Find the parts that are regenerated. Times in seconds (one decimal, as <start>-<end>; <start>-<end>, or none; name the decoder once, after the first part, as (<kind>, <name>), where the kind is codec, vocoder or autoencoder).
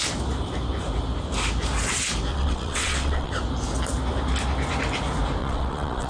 2.3-3.3 (vocoder, WaveNeXt); 5.4-6.1